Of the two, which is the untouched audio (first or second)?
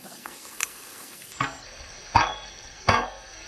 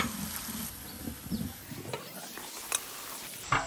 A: second